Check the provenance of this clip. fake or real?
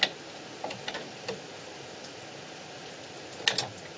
real